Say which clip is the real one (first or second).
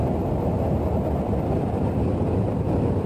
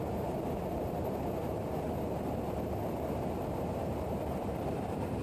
first